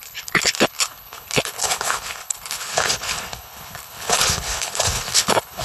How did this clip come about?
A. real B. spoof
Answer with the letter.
B